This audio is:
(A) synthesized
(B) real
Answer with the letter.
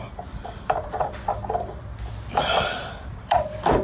A